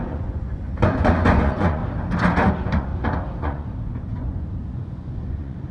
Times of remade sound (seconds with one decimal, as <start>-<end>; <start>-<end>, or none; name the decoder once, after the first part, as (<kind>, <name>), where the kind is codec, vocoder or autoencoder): 0.0-1.8 (vocoder, Vocos); 2.5-2.9; 3.4-5.7